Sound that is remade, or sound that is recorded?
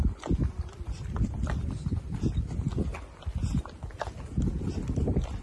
recorded